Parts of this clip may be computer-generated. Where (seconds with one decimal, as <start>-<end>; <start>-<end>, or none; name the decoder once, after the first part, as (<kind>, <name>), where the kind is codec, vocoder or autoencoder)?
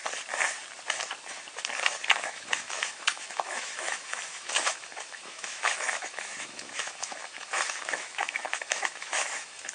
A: 2.2-9.7 (autoencoder, DAC-VAE)